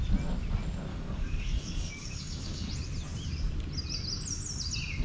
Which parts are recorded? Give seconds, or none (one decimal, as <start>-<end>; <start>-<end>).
0.0-0.9; 2.7-5.0